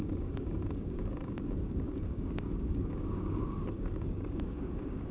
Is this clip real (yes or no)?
no